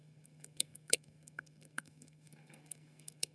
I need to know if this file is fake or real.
fake